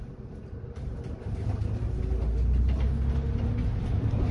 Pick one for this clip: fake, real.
real